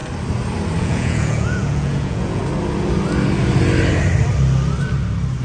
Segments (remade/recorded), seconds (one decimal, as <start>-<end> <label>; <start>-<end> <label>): 0.0-0.8 recorded; 0.8-2.4 remade; 2.4-5.4 recorded